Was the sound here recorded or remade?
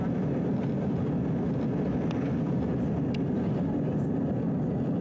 recorded